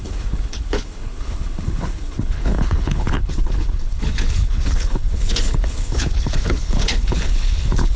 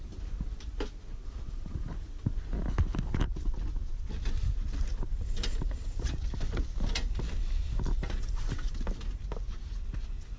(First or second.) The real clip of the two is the second